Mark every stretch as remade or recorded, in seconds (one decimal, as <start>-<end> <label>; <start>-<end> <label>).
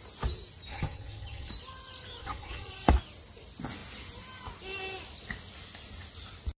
0.0-0.7 recorded; 0.7-1.5 remade; 1.5-2.2 recorded; 2.2-2.7 remade; 2.7-6.6 recorded